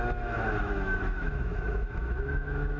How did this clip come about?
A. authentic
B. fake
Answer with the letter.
B